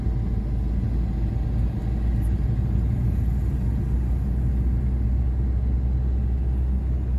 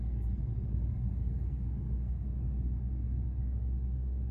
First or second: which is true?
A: first